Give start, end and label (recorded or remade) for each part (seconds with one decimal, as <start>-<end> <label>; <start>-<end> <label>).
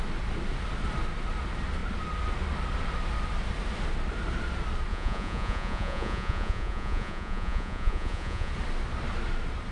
0.0-4.9 recorded; 4.9-8.5 remade; 8.5-9.7 recorded